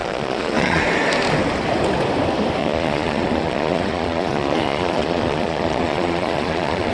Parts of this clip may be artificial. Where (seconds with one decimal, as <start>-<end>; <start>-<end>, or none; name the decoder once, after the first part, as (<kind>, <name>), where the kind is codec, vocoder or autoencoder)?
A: 0.0-0.8 (vocoder, Vocos); 2.6-6.9